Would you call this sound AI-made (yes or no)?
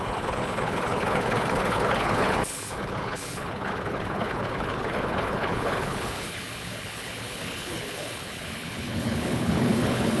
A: yes